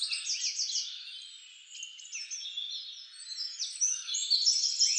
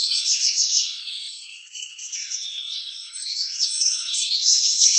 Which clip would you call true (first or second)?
first